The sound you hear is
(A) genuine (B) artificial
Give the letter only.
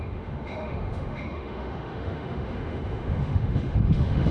B